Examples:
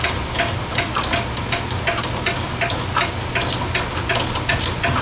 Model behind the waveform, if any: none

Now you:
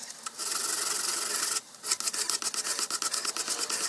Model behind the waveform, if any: none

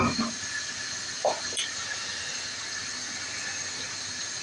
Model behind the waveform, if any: none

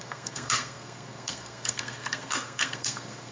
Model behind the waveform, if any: codec, SNAC